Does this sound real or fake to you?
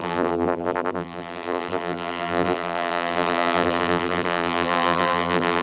fake